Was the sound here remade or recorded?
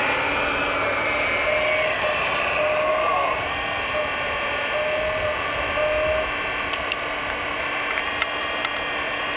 recorded